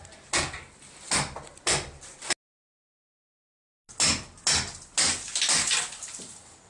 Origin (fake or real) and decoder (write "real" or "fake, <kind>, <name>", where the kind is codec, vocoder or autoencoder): real